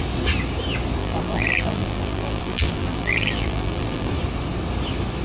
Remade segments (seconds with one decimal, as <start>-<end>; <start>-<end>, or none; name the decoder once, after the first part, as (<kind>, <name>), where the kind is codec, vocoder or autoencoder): 1.0-4.1 (vocoder, BigVGAN v2)